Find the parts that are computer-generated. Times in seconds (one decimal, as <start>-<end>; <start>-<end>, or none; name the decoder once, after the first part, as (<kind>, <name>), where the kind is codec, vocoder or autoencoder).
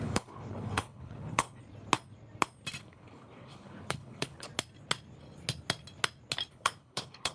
0.0-1.6 (codec, HILCodec); 2.8-4.5; 6.5-7.3